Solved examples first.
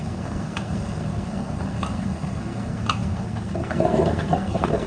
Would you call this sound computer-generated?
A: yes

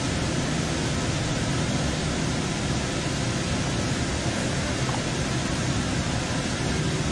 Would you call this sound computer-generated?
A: no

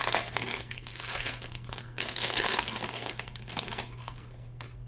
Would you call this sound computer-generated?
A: yes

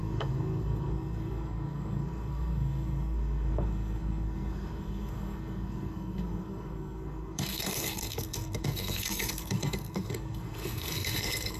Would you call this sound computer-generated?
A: yes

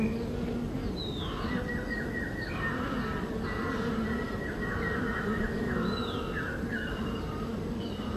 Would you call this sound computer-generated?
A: no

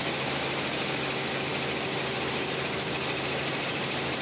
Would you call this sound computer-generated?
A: no